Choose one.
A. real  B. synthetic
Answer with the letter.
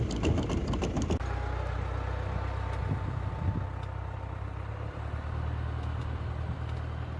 A